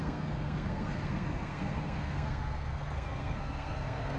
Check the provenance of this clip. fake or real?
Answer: fake